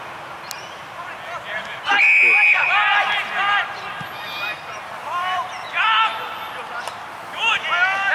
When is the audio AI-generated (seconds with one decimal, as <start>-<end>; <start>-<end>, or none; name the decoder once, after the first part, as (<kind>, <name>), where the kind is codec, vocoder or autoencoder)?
5.0-5.6 (vocoder, BigVGAN v2)